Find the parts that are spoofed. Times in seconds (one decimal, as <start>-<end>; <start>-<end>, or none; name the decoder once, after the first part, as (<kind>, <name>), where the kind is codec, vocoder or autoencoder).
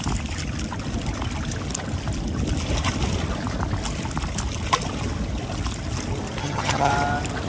6.4-6.9 (vocoder, HiFi-GAN)